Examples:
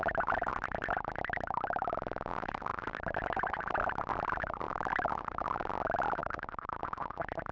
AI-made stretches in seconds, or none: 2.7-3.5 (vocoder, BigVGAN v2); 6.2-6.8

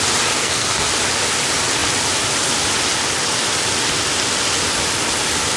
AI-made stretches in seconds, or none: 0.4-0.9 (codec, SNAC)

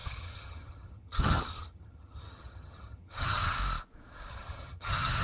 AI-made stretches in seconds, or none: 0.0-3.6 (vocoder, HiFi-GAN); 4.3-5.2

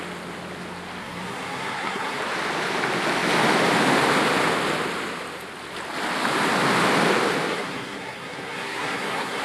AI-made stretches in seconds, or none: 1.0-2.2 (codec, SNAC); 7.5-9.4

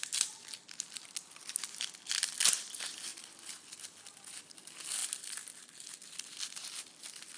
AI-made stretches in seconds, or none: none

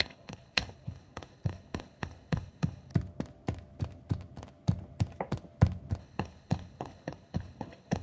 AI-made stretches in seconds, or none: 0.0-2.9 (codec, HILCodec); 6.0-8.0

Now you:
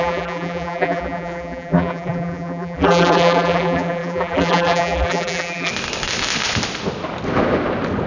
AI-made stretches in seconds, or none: 0.0-5.7 (vocoder, BigVGAN v2)